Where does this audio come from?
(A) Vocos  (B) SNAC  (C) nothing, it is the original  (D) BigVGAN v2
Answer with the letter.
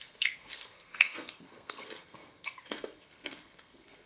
B